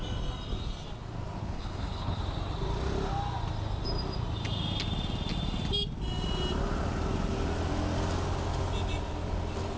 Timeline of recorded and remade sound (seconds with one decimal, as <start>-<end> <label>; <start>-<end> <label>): 0.0-1.4 recorded; 1.4-2.2 remade; 2.2-9.8 recorded